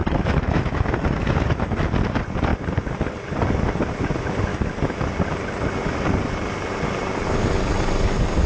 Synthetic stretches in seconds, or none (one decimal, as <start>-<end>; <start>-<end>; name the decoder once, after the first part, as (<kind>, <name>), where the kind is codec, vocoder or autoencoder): 0.0-1.8 (autoencoder, DAC-VAE); 4.5-5.0